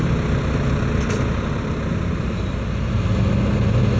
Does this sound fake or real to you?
real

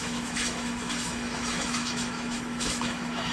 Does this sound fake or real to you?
fake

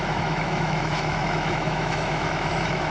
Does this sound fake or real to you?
fake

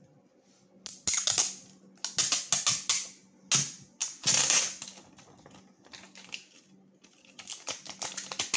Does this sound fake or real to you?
real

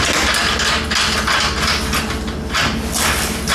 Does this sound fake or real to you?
real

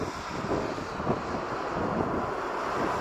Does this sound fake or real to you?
real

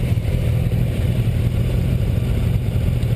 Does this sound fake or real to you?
real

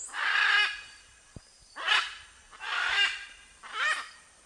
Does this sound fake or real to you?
real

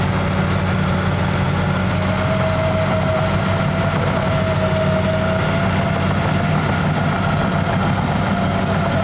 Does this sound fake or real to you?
real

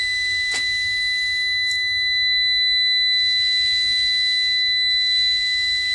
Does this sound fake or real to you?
real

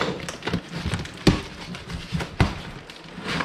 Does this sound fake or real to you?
real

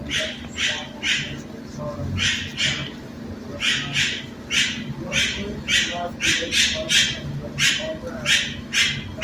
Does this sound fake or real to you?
real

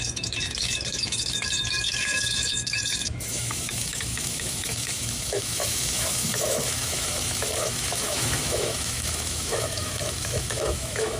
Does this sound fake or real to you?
fake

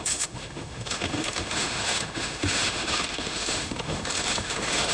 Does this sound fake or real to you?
fake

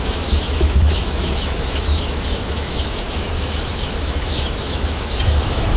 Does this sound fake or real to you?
fake